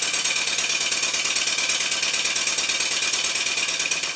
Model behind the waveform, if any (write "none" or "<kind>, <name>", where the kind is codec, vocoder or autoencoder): none